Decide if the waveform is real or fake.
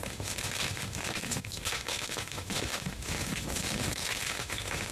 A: fake